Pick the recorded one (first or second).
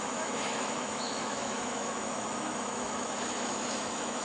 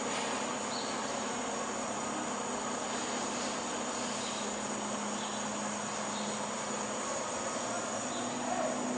second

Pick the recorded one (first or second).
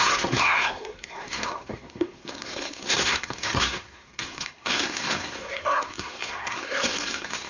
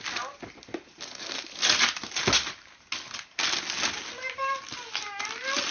second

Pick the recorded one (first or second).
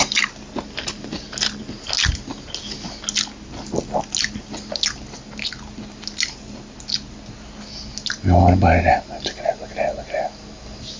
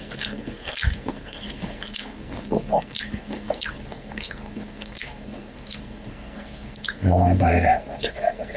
first